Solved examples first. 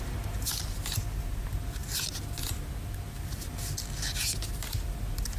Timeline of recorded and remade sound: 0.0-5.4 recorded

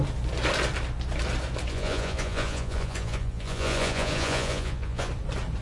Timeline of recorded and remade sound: 0.0-1.7 recorded; 1.7-5.1 remade; 5.1-5.6 recorded

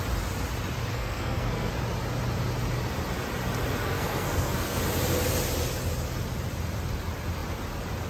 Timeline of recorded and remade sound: 0.0-0.9 recorded; 0.9-1.7 remade; 1.7-3.8 recorded; 3.8-4.8 remade; 4.8-8.1 recorded

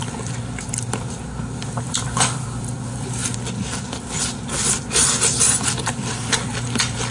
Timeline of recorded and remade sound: 0.0-3.2 remade; 3.2-4.8 recorded; 4.8-7.1 remade

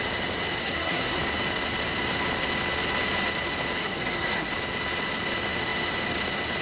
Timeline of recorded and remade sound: 0.0-0.6 recorded; 0.6-1.2 remade; 1.2-3.8 recorded; 3.8-4.5 remade; 4.5-6.6 recorded

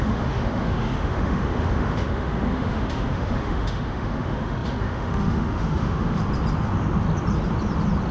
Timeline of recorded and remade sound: 0.0-6.2 remade; 6.2-8.1 recorded

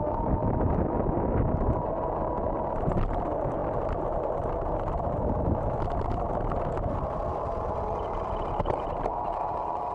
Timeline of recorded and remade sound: 0.0-9.9 recorded

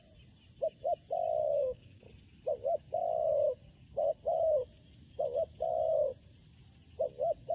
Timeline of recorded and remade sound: 0.0-1.4 recorded; 1.4-2.0 remade; 2.0-7.5 recorded